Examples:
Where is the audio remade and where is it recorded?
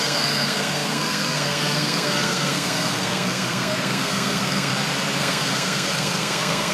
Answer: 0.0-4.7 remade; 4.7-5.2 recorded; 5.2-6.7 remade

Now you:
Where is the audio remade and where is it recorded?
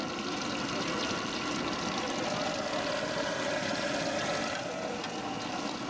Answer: 0.0-5.9 recorded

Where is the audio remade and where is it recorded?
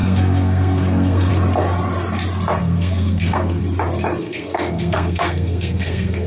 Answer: 0.0-1.3 remade; 1.3-2.6 recorded; 2.6-3.6 remade; 3.6-4.2 recorded; 4.2-6.3 remade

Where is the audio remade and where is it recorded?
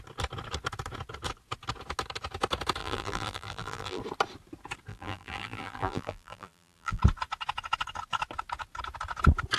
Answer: 0.0-2.8 recorded; 2.8-4.0 remade; 4.0-4.9 recorded; 4.9-7.0 remade; 7.0-9.6 recorded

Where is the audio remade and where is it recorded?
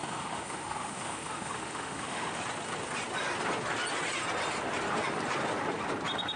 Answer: 0.0-2.4 remade; 2.4-6.4 recorded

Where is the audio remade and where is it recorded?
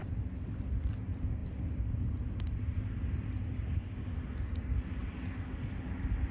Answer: 0.0-6.3 recorded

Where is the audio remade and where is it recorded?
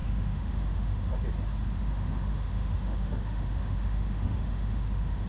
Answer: 0.0-1.1 remade; 1.1-1.7 recorded; 1.7-5.3 remade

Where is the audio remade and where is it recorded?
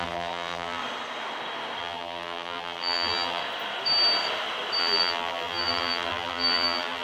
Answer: 0.0-0.8 remade; 0.8-1.8 recorded; 1.8-3.4 remade; 3.4-4.8 recorded; 4.8-7.0 remade